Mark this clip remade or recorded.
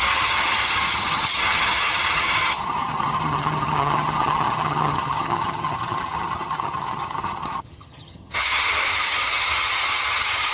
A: remade